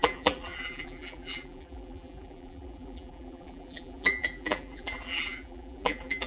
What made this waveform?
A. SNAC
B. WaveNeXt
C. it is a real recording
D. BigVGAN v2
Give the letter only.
D